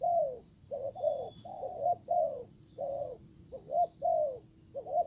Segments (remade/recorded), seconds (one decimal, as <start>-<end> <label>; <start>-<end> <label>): 0.0-0.4 recorded; 0.4-3.5 remade; 3.5-5.1 recorded